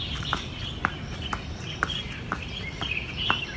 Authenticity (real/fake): fake